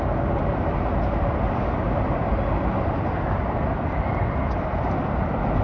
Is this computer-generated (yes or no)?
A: no